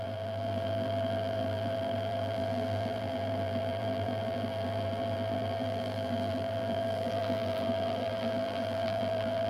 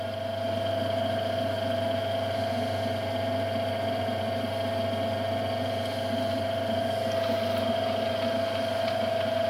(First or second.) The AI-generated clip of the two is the first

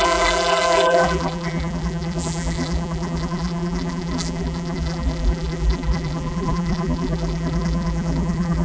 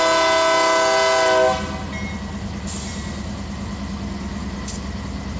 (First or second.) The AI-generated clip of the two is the first